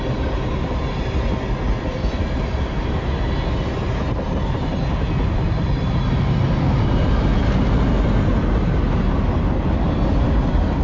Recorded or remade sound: recorded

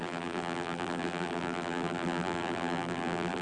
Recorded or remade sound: remade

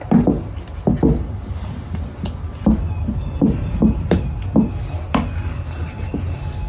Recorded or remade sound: recorded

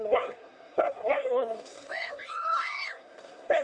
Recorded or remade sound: remade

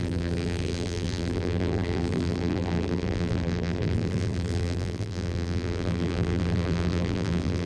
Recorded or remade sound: remade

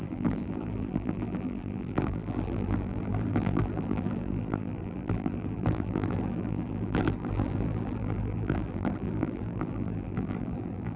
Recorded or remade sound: remade